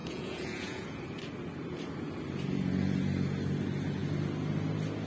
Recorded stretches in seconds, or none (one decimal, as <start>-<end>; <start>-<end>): 1.0-5.1

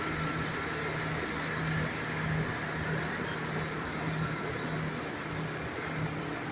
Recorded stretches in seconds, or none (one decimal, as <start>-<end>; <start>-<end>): 0.0-6.5

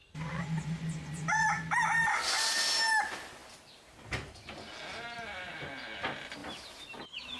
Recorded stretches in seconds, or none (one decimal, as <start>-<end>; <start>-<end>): 1.6-7.4